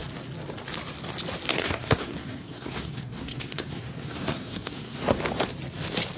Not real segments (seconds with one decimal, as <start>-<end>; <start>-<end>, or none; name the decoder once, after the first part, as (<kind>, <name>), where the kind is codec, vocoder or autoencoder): 1.5-5.2 (codec, SNAC)